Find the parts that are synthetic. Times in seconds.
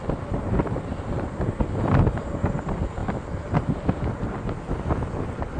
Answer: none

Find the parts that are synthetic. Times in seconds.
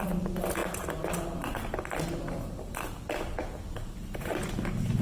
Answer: none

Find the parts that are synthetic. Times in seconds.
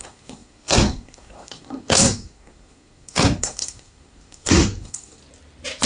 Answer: 0.0-5.2 (codec, SNAC)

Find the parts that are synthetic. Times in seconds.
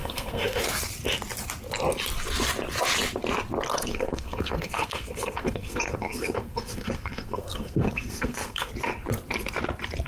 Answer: 0.0-0.6 (codec, SNAC); 3.7-8.7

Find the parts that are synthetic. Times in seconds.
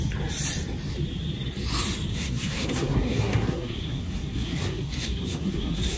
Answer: 2.1-6.0 (codec, SNAC)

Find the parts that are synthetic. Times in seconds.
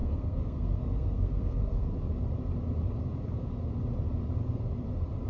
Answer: 0.0-1.9 (codec, SNAC)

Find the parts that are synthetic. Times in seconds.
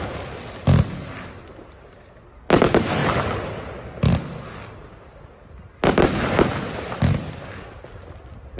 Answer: none